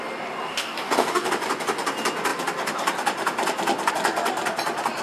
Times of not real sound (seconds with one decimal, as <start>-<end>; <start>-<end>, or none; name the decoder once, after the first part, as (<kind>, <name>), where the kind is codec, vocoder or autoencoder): 0.5-1.3 (codec, DAC)